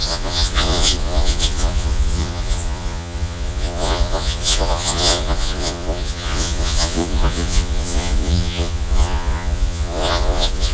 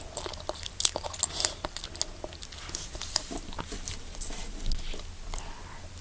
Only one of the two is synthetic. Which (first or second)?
first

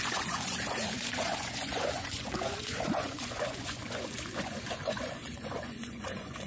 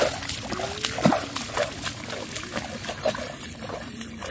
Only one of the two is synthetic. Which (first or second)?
first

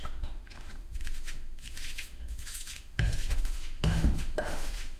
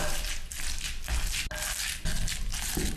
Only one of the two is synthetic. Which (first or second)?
first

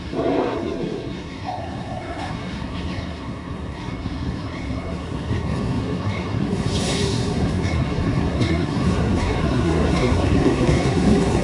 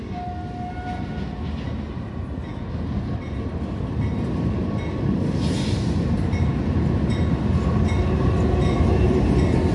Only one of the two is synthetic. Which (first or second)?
first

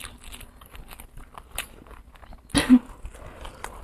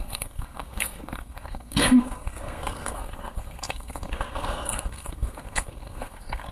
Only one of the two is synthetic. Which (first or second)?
second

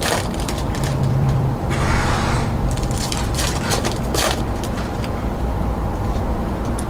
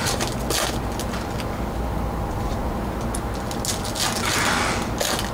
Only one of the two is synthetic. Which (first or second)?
first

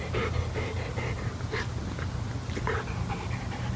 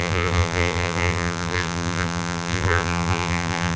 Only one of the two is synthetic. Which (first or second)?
second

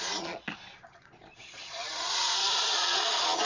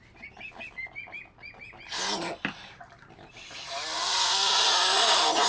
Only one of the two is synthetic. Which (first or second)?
first